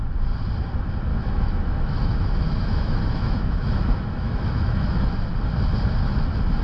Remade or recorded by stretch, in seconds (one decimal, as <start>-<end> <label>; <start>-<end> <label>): 0.0-1.1 recorded; 1.1-5.1 remade; 5.1-6.6 recorded